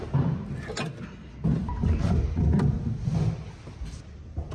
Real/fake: real